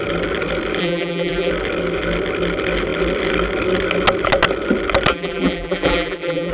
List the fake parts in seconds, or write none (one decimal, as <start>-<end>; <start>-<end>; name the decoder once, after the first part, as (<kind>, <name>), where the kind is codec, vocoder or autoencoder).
0.8-1.5 (vocoder, BigVGAN v2); 5.1-6.5